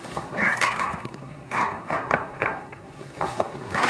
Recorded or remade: remade